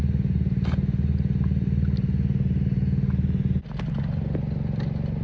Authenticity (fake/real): real